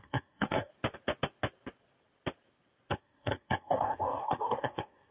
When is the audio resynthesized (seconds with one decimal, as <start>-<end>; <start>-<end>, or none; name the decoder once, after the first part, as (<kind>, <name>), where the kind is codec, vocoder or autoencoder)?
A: 0.0-0.7 (codec, SNAC); 2.9-5.1